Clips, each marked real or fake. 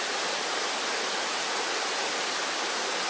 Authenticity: real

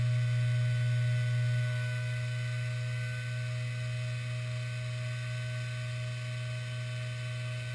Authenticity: real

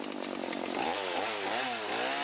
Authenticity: real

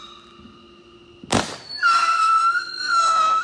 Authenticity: real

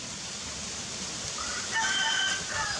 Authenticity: real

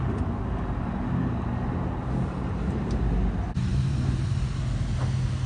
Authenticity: real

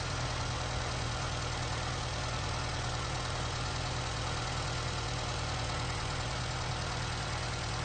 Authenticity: fake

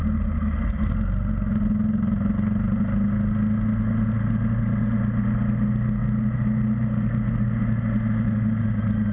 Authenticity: real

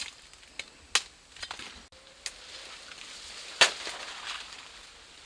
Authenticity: real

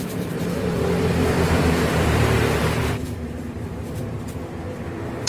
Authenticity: fake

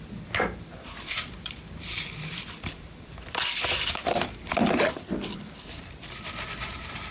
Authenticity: fake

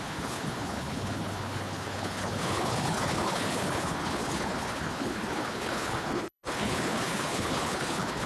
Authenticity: fake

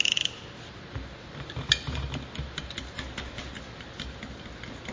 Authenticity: real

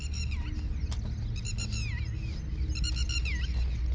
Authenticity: real